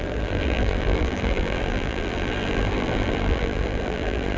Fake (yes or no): yes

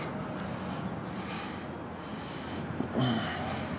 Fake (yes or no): no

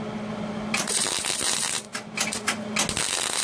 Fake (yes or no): no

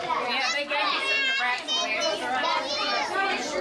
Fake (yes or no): no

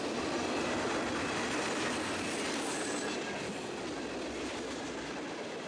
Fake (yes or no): no